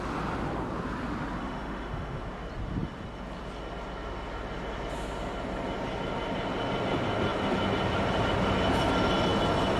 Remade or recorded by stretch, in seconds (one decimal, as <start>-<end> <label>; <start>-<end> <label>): 0.0-1.4 recorded; 1.4-2.2 remade; 2.2-9.8 recorded